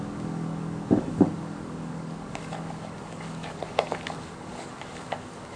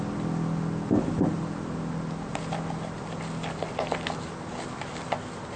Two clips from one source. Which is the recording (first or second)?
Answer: second